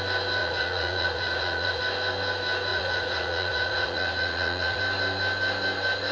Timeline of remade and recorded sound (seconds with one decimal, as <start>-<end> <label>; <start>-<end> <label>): 0.0-0.4 recorded; 0.4-1.8 remade; 1.8-2.7 recorded; 2.7-4.8 remade; 4.8-6.1 recorded